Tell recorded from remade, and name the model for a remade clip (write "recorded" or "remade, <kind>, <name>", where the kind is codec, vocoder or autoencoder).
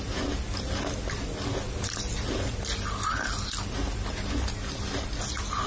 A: recorded